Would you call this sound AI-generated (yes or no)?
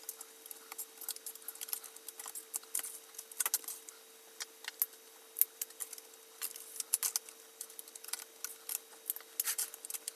no